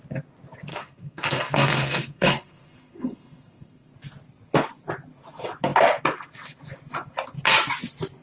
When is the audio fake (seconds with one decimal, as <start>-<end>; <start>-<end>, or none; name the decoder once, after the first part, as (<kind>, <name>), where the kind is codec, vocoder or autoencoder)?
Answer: 0.7-3.9 (codec, SNAC)